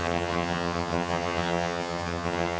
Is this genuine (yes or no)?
no